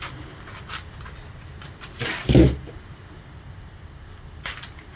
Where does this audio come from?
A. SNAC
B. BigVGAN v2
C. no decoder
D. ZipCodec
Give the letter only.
C